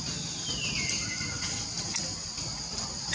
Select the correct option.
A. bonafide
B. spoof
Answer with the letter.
A